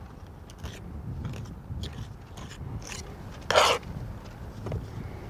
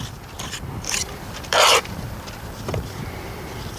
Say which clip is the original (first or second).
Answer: first